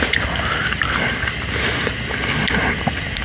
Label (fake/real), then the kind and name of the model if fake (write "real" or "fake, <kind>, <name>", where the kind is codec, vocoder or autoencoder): real